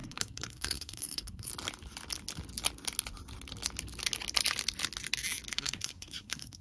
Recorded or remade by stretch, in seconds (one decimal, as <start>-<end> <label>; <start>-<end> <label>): 0.0-1.5 remade; 1.5-5.5 recorded; 5.5-6.6 remade